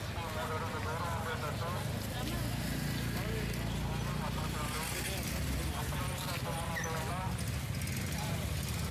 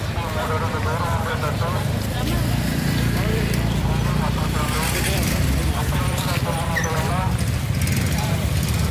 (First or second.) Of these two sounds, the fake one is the second